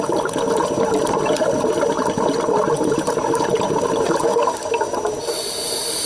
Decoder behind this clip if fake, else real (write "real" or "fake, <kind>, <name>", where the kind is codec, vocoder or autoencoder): real